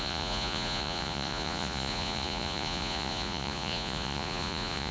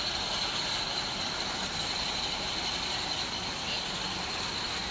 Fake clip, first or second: first